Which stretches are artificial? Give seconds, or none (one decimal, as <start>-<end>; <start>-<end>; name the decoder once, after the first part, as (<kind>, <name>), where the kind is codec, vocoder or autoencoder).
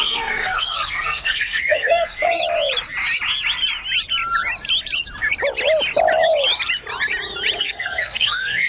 0.0-2.4 (codec, SNAC); 7.6-8.7